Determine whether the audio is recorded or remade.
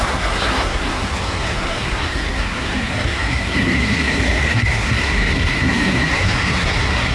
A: remade